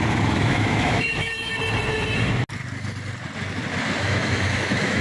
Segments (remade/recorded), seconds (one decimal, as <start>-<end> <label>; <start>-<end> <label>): 0.0-1.5 remade; 1.5-4.0 recorded; 4.0-5.0 remade